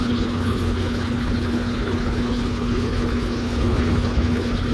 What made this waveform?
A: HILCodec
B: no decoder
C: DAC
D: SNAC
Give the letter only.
A